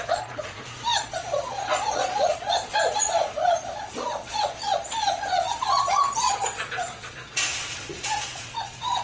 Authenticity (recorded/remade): remade